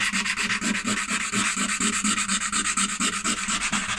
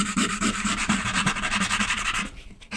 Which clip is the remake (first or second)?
second